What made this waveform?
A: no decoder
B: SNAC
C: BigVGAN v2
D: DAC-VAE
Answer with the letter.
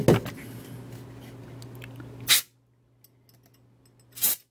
A